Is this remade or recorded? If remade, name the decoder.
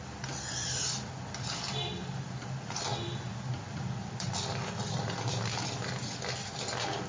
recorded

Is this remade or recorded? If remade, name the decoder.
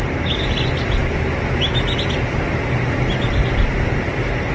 recorded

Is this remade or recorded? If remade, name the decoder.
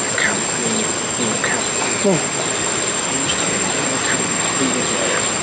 recorded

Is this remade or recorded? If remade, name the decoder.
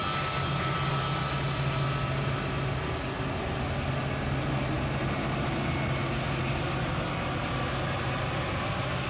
recorded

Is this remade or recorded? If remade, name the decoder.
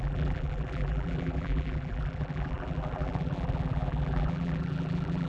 remade, vocoder, BigVGAN v2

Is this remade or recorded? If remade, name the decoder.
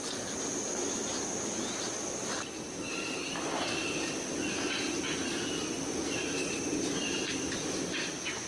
recorded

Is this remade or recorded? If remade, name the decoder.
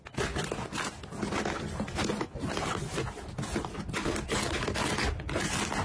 recorded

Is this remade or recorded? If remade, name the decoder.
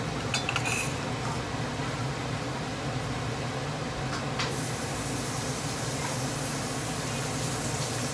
recorded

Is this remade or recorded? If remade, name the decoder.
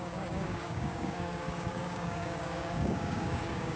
remade, codec, DAC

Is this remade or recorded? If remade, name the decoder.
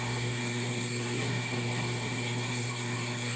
remade, codec, SNAC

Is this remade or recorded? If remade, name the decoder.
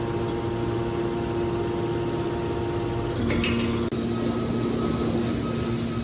recorded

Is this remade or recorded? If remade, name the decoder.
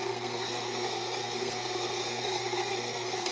remade, codec, SNAC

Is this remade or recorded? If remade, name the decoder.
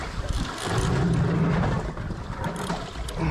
recorded